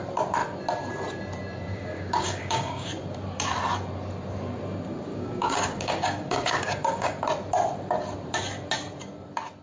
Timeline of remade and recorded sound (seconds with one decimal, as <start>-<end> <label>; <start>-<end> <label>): 0.0-1.7 recorded; 1.7-2.9 remade; 2.9-5.1 recorded; 5.1-7.2 remade; 7.2-9.6 recorded